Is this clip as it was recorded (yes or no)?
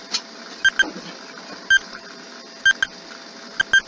yes